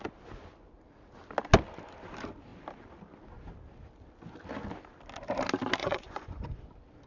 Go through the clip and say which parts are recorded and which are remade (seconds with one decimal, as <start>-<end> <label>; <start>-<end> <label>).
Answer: 0.0-5.8 recorded; 5.8-6.6 remade; 6.6-7.1 recorded